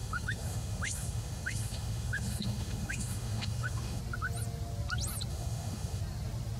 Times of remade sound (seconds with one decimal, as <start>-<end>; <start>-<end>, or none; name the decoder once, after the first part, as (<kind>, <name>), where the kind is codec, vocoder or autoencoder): 0.0-4.0 (autoencoder, DAC-VAE); 5.3-6.0